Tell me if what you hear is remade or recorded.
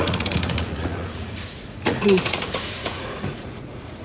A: remade